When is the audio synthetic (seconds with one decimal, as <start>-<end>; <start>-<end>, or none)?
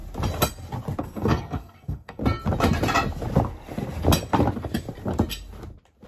1.0-2.2